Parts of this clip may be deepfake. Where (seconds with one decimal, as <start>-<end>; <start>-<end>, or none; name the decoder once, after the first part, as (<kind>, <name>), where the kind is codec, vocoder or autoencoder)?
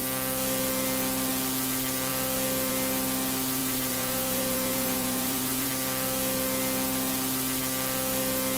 3.6-5.7 (vocoder, Vocos)